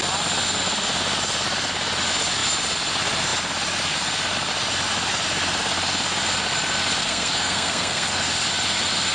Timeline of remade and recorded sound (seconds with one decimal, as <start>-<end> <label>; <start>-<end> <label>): 0.0-7.0 recorded; 7.0-8.3 remade; 8.3-9.1 recorded